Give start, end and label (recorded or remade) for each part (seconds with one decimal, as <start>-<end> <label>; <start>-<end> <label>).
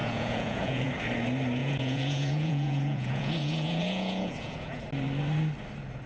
0.0-0.9 remade; 0.9-1.6 recorded; 1.6-4.8 remade; 4.8-6.1 recorded